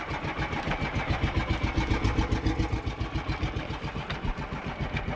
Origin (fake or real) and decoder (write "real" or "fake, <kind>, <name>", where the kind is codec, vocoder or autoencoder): real